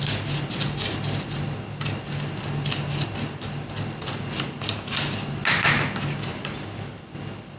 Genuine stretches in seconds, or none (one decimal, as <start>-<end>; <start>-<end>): 0.0-7.6